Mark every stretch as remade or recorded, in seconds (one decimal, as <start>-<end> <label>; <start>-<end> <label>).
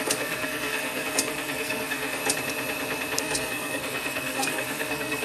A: 0.0-2.2 remade; 2.2-3.2 recorded; 3.2-5.2 remade